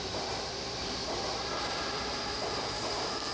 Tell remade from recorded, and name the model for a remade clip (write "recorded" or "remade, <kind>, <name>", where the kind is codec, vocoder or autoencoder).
recorded